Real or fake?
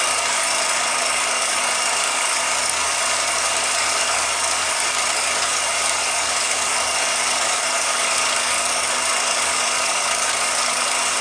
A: fake